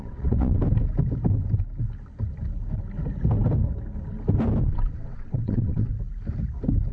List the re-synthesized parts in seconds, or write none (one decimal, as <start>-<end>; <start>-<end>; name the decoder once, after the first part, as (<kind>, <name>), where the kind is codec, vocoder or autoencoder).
0.0-0.6 (vocoder, WaveNeXt); 4.7-5.9